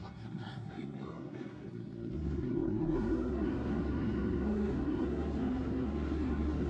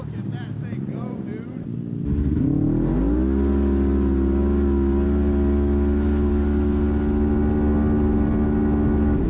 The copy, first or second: first